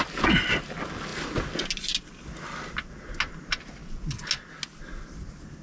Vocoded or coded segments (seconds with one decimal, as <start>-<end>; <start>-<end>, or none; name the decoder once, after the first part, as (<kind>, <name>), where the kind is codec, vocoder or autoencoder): none